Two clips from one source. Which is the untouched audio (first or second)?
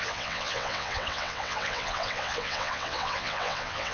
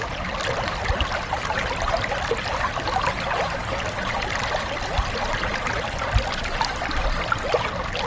second